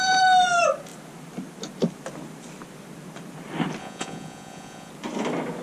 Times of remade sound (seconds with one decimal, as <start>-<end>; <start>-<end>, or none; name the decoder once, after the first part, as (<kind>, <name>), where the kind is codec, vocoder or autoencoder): 3.8-4.9 (vocoder, Vocos)